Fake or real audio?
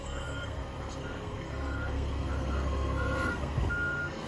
fake